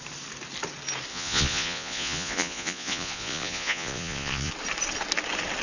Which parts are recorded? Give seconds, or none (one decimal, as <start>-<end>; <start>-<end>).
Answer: 0.0-1.1; 4.5-5.6